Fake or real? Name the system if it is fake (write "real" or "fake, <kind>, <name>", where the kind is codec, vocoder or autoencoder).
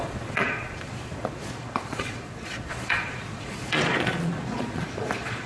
fake, vocoder, Vocos